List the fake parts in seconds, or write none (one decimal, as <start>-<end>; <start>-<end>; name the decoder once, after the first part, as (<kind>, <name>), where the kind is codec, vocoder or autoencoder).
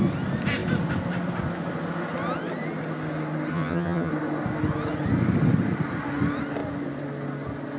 3.5-4.1 (vocoder, HiFi-GAN)